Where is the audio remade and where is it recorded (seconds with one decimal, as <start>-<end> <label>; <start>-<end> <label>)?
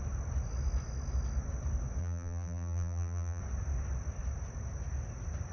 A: 0.0-2.0 recorded; 2.0-3.4 remade; 3.4-5.5 recorded